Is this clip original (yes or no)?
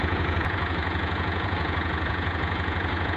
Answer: no